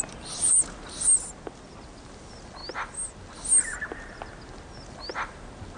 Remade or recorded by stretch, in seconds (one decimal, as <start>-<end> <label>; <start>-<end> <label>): 0.0-5.8 recorded